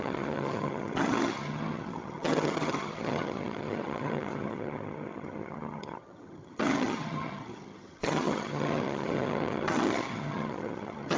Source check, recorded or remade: remade